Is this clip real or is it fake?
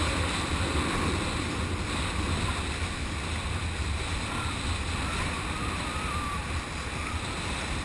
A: real